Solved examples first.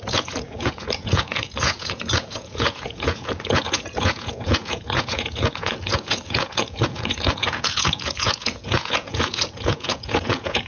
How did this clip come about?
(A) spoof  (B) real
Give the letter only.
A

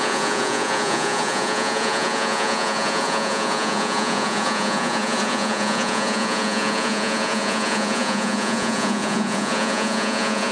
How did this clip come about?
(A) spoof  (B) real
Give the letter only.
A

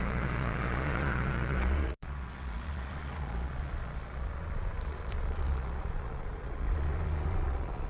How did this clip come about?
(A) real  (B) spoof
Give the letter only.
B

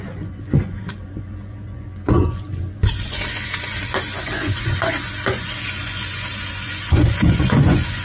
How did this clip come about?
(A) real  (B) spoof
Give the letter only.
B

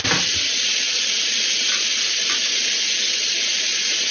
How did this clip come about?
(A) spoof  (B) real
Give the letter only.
B